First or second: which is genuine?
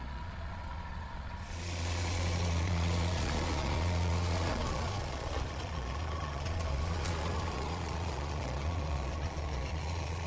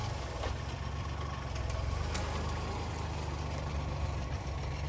second